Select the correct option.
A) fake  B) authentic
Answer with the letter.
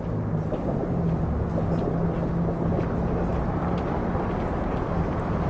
B